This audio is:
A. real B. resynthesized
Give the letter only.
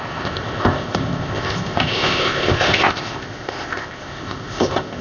B